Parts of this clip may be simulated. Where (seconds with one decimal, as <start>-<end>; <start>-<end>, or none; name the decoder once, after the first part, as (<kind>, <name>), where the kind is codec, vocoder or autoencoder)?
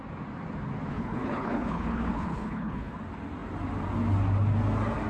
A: 0.9-2.9 (codec, HILCodec)